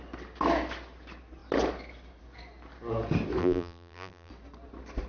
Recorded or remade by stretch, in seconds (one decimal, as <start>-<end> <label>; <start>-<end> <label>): 0.0-3.4 recorded; 3.4-4.3 remade; 4.3-5.1 recorded